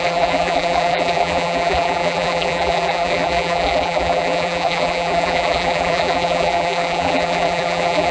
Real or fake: fake